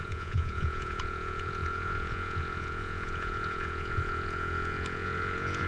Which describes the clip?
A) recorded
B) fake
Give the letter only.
B